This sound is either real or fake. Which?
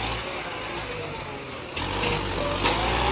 real